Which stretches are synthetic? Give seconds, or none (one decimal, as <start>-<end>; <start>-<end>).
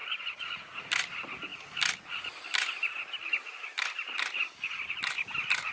0.0-0.8